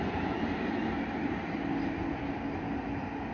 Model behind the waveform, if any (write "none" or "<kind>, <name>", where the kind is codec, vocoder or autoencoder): none